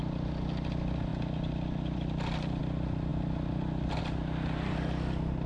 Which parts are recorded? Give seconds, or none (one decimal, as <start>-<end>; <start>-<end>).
0.0-5.5